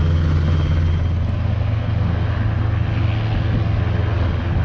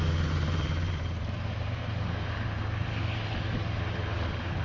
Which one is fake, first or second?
second